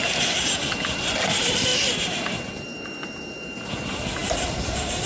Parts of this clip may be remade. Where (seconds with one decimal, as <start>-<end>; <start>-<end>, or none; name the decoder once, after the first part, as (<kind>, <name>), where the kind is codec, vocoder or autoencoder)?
0.0-1.7 (vocoder, BigVGAN v2); 3.7-5.1